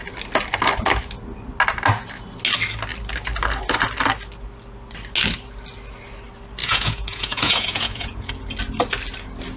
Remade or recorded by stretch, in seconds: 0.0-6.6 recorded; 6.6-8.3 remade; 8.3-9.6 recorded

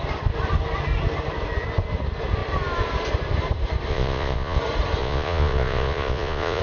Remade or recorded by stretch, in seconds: 0.0-3.9 recorded; 3.9-4.6 remade; 4.6-5.0 recorded; 5.0-6.6 remade

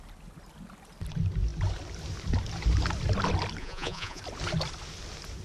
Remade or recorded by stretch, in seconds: 0.0-3.6 recorded; 3.6-4.2 remade; 4.2-5.4 recorded

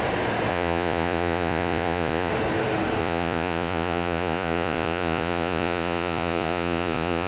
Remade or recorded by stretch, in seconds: 0.0-0.5 recorded; 0.5-2.3 remade; 2.3-3.0 recorded; 3.0-7.3 remade

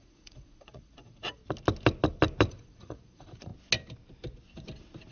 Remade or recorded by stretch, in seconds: 0.0-1.4 remade; 1.4-2.5 recorded; 2.5-3.5 remade; 3.5-5.1 recorded

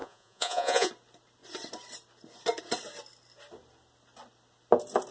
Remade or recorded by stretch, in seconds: 0.0-0.9 remade; 0.9-5.1 recorded

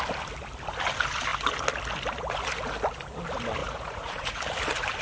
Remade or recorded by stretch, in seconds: 0.0-3.6 recorded; 3.6-4.4 remade; 4.4-5.0 recorded